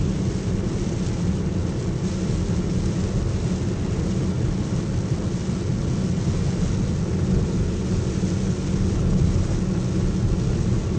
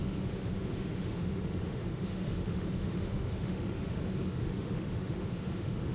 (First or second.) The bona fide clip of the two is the first